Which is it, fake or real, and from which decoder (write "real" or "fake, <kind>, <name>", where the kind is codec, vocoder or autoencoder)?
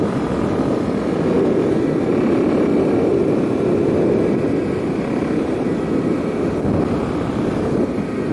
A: real